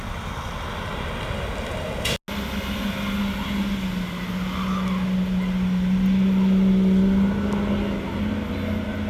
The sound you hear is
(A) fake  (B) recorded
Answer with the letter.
B